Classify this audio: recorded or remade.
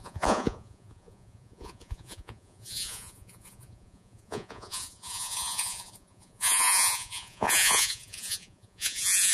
remade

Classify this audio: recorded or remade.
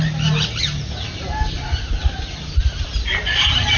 recorded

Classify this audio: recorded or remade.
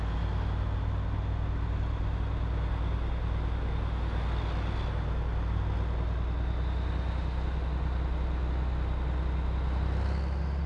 recorded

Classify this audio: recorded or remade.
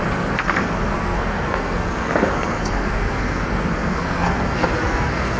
remade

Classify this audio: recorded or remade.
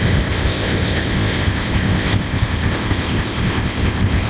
remade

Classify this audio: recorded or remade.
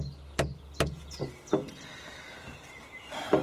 recorded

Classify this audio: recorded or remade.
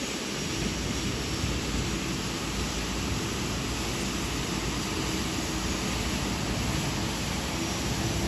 recorded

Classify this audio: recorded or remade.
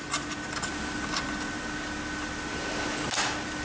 recorded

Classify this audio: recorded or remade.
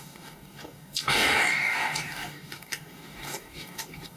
remade